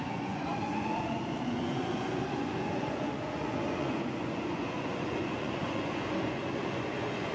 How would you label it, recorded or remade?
remade